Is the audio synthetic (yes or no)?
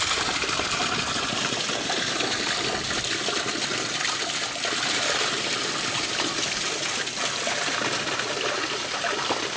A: no